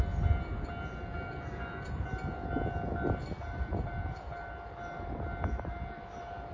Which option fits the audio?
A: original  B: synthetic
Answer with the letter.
A